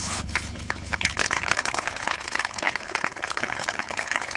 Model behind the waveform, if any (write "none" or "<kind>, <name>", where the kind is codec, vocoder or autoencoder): codec, HILCodec